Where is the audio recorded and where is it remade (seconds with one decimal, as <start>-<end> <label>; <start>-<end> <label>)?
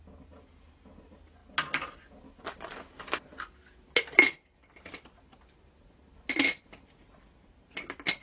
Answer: 0.0-8.2 recorded